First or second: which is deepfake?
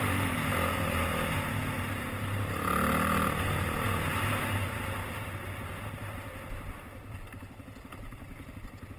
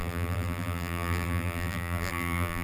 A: second